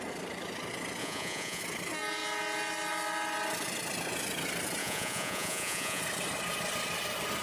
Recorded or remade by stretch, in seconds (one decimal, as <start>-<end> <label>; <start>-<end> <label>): 0.0-1.0 recorded; 1.0-1.6 remade; 1.6-4.8 recorded; 4.8-6.0 remade; 6.0-7.4 recorded